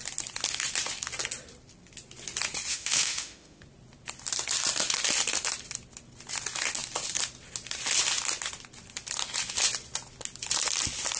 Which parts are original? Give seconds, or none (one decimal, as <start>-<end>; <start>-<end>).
0.0-2.7; 3.6-11.2